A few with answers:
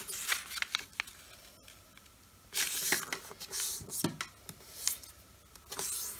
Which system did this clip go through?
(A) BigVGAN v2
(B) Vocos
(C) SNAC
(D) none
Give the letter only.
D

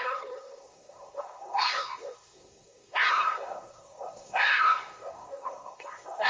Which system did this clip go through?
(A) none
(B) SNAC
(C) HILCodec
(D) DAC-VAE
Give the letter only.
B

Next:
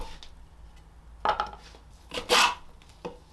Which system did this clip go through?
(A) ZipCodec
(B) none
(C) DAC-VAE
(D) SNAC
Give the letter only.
B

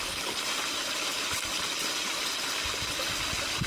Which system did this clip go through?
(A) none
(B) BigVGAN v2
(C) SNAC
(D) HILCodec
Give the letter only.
A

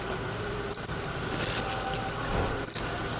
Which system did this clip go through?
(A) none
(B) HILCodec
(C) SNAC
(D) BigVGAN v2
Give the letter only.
A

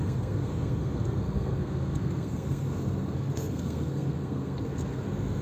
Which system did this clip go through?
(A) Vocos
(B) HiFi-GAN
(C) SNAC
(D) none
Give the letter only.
C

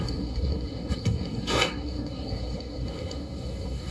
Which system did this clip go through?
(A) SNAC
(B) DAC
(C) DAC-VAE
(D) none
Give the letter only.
A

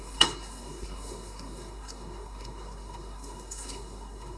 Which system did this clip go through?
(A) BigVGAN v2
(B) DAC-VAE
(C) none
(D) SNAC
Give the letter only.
D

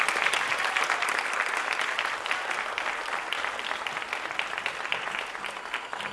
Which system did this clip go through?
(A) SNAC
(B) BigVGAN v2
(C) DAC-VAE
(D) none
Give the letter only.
D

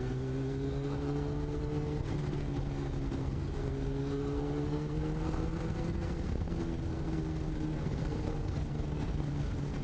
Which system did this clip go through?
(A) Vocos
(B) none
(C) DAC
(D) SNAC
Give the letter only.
D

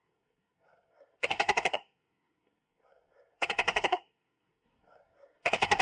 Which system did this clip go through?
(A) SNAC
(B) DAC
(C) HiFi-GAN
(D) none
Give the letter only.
A